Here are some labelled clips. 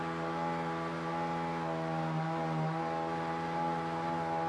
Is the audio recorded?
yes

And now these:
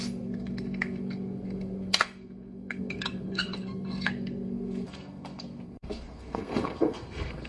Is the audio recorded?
no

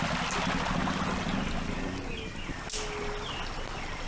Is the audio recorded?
yes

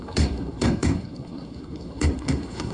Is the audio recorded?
no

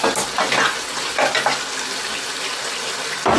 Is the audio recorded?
yes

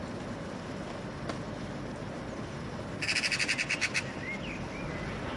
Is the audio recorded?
yes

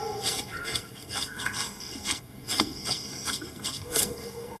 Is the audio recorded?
no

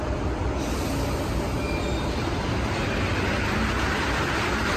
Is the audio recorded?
yes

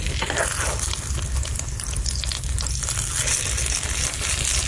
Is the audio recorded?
yes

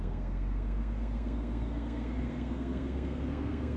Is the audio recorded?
no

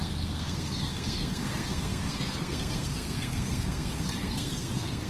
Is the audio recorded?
no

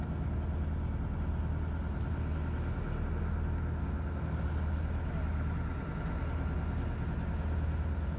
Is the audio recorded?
yes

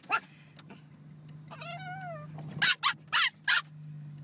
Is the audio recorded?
yes